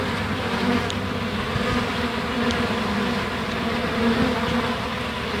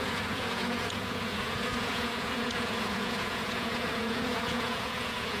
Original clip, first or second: first